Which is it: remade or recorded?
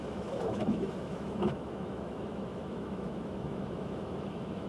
remade